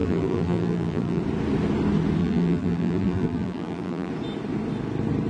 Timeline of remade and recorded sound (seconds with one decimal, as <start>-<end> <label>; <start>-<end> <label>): 0.0-1.2 remade; 1.2-2.2 recorded; 2.2-4.1 remade; 4.1-5.3 recorded